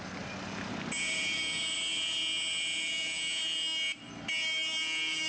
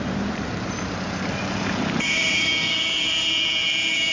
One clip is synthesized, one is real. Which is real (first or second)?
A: first